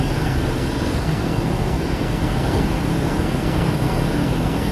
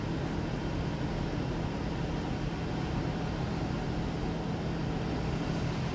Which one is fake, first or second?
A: first